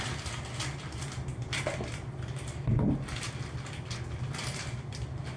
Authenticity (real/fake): real